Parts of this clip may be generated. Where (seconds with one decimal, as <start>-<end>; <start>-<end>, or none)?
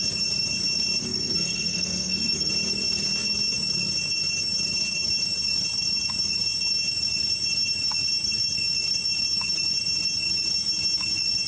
1.0-2.5